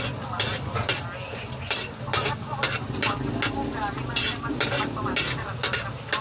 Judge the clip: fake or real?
real